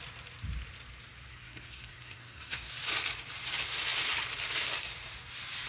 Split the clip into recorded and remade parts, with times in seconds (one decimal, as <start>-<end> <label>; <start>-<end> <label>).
0.0-1.3 recorded; 1.3-2.7 remade; 2.7-5.7 recorded